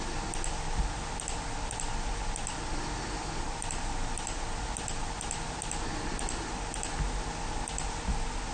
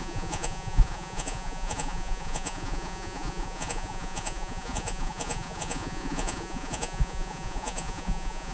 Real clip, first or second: first